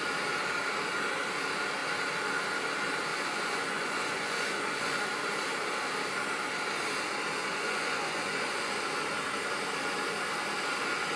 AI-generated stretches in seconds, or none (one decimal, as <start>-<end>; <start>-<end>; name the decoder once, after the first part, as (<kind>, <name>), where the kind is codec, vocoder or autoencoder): 3.1-5.0 (vocoder, Vocos); 7.5-8.8